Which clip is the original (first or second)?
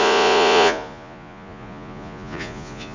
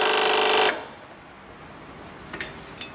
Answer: second